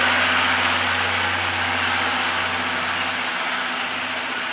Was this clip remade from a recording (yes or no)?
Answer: no